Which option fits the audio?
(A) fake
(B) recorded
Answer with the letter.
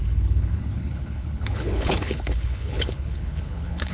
A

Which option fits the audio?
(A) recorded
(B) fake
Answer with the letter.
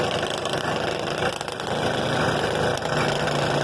A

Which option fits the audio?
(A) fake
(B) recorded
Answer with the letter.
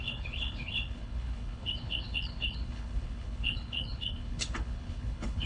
A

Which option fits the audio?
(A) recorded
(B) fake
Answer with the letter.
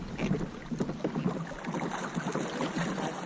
A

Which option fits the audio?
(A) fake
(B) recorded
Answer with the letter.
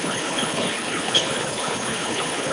A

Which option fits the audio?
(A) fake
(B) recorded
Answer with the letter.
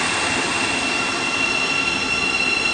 B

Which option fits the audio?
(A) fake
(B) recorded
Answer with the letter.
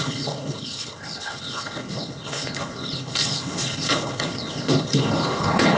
A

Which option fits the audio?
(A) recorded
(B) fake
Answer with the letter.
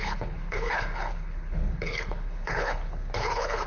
B